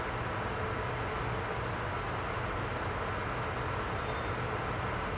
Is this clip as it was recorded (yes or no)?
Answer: yes